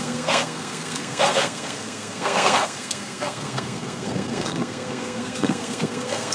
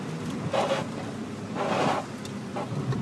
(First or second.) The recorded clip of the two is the second